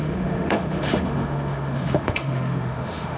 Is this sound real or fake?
fake